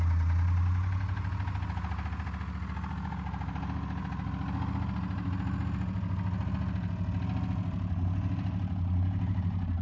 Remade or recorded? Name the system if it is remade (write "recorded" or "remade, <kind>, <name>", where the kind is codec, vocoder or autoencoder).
recorded